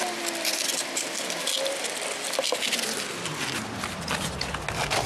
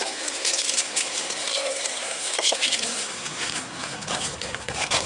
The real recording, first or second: first